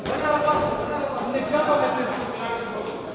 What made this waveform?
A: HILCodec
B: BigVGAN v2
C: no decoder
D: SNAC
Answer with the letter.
C